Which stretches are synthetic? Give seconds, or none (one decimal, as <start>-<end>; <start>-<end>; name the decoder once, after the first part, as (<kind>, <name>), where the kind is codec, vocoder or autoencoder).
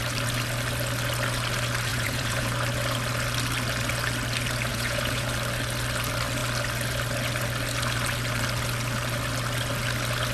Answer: 1.9-2.5 (vocoder, Vocos); 4.7-5.3